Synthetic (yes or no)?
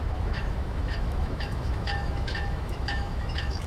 yes